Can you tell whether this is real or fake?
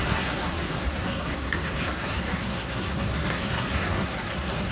fake